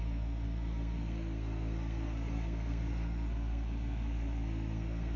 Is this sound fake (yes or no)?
yes